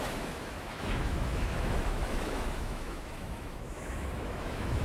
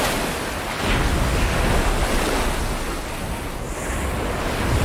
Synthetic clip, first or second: first